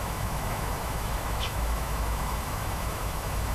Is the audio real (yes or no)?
no